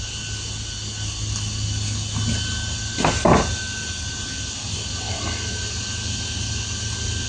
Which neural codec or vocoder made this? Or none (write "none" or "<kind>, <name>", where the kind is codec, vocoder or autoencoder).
none